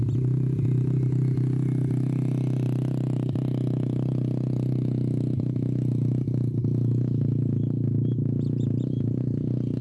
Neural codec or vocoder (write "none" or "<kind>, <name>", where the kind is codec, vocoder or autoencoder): none